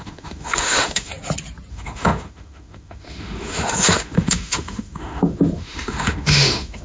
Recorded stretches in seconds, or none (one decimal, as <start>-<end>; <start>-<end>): 1.1-1.7